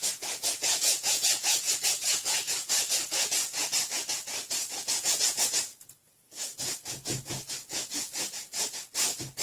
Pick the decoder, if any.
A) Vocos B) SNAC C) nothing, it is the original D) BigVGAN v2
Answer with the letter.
A